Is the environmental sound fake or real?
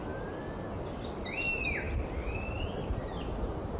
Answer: fake